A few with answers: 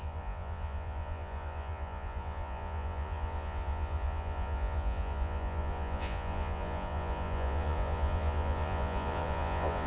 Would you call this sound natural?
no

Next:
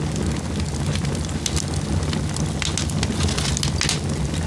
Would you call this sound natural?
yes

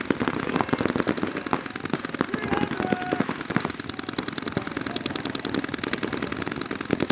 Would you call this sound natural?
yes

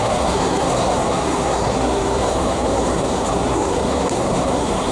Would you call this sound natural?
no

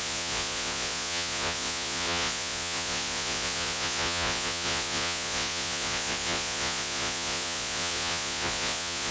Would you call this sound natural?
no